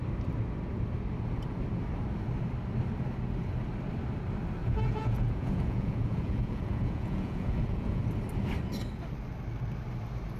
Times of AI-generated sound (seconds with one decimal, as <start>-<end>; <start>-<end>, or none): 4.6-8.0